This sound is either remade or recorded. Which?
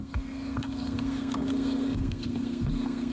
remade